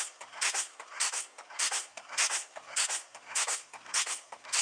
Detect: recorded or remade remade